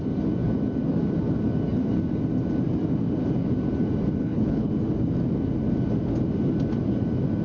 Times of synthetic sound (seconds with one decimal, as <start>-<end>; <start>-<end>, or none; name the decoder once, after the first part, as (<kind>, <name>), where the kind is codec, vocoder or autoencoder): 4.2-4.7 (codec, HILCodec)